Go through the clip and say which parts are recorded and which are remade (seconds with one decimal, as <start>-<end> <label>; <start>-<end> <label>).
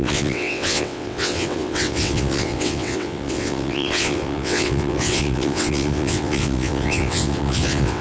0.0-8.0 remade